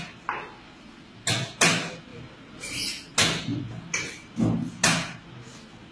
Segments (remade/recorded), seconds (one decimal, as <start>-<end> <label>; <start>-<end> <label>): 0.0-2.1 recorded; 2.1-2.9 remade; 2.9-5.9 recorded